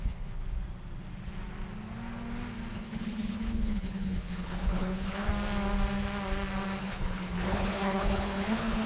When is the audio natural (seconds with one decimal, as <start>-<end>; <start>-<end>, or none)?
0.4-2.7; 5.3-6.8